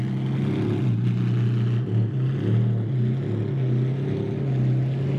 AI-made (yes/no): no